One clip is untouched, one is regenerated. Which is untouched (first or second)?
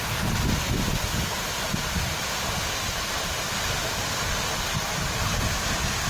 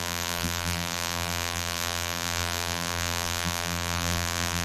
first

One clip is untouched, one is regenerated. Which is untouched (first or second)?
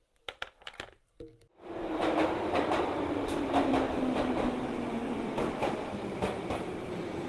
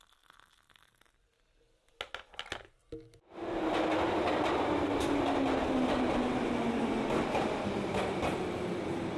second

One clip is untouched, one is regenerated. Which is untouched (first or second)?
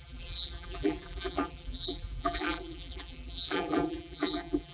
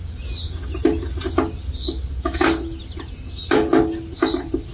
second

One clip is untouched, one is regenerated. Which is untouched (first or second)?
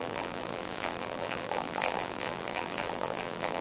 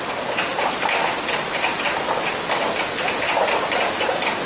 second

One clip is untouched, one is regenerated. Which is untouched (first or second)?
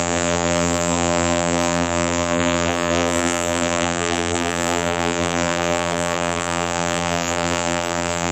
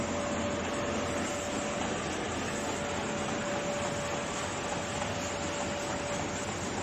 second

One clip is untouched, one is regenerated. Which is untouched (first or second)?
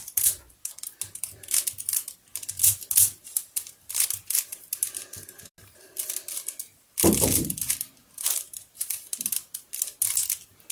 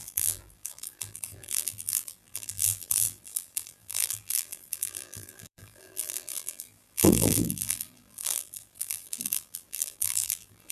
first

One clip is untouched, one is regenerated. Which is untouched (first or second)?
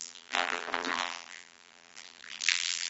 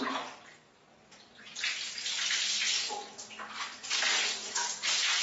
second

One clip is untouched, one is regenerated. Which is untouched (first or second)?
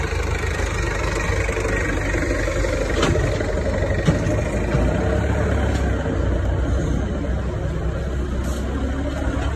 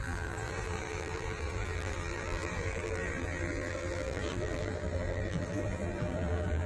first